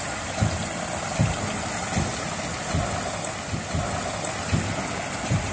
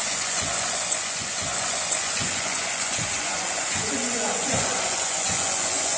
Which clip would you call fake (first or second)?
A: second